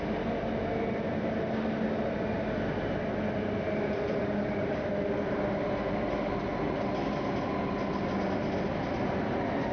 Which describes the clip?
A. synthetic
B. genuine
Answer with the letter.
B